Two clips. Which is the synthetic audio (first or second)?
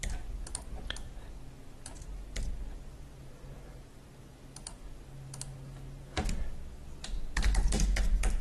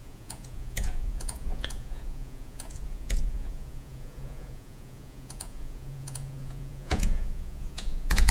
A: second